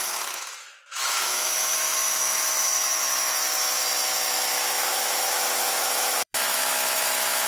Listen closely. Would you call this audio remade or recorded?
remade